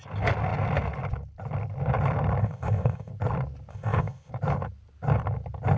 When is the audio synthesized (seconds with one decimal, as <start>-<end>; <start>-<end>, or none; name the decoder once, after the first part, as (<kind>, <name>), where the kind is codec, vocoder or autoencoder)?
2.4-3.1 (codec, ZipCodec); 3.7-4.3